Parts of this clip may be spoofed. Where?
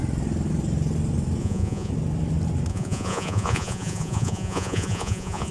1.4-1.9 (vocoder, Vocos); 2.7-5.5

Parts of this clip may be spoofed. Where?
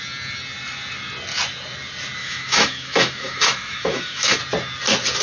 2.2-4.4 (autoencoder, DAC-VAE)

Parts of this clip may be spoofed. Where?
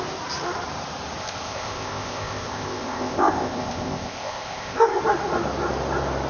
1.2-5.0 (codec, ZipCodec)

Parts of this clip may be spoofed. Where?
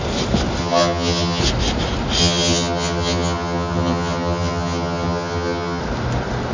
0.6-1.4 (vocoder, HiFi-GAN); 2.2-5.8